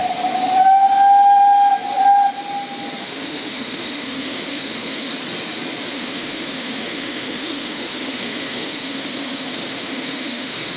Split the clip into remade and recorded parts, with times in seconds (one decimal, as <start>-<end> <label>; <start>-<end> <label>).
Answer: 0.0-3.0 recorded; 3.0-5.1 remade; 5.1-5.9 recorded; 5.9-10.8 remade